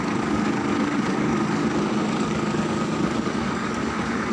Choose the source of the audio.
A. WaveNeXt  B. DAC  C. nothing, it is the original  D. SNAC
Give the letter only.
B